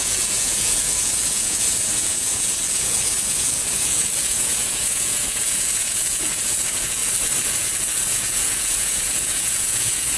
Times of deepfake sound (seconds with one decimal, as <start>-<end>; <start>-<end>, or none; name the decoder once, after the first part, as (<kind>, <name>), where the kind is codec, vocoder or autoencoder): 0.0-7.0 (vocoder, Vocos); 7.5-10.2